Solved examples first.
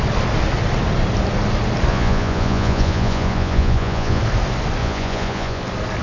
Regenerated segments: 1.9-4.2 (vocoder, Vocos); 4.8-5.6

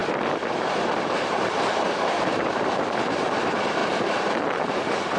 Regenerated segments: 0.0-3.8 (vocoder, BigVGAN v2); 4.7-5.2

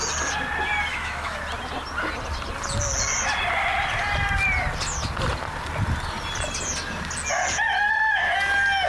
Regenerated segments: 0.9-1.4 (autoencoder, DAC-VAE)

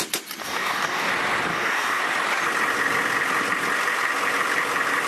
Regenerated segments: 0.4-1.1 (codec, DAC); 1.5-2.0

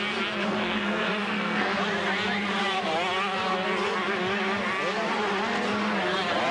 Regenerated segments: 0.4-1.8 (codec, SNAC)

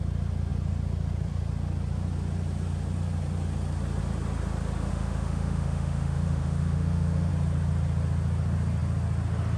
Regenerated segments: 4.9-7.3 (autoencoder, DAC-VAE)

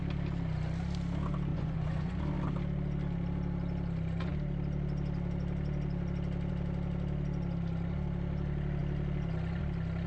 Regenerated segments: 1.5-2.2 (vocoder, Vocos)

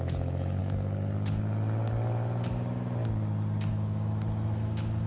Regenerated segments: 0.0-0.6 (autoencoder, DAC-VAE); 3.7-5.1